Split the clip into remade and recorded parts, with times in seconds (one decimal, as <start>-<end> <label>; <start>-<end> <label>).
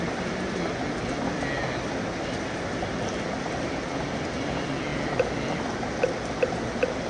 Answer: 0.0-7.1 recorded